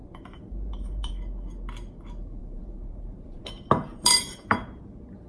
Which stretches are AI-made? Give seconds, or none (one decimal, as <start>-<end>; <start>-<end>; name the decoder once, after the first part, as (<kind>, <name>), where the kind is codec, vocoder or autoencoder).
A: 0.0-1.1 (vocoder, BigVGAN v2); 2.4-3.4; 3.9-4.8